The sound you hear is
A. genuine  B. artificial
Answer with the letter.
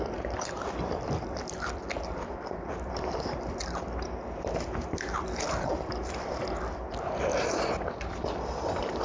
B